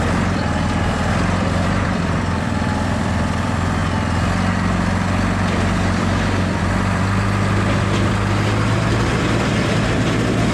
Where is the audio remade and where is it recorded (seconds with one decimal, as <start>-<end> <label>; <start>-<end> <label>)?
0.0-3.8 remade; 3.8-6.6 recorded; 6.6-10.5 remade